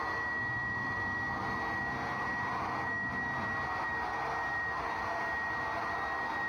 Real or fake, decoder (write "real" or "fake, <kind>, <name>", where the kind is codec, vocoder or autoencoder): real